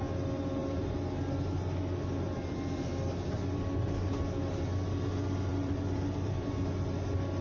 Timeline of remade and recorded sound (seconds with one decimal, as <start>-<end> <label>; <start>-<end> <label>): 0.0-5.5 recorded; 5.5-6.5 remade; 6.5-7.4 recorded